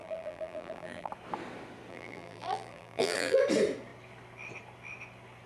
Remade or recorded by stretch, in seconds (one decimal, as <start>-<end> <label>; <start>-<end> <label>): 0.0-1.1 remade; 1.1-1.9 recorded; 1.9-3.4 remade; 3.4-5.5 recorded